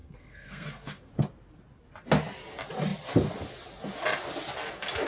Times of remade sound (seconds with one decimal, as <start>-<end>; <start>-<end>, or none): 0.0-1.1